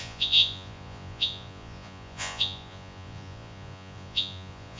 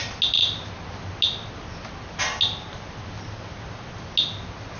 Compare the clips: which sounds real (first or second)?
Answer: second